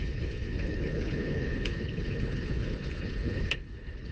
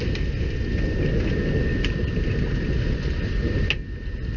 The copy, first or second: first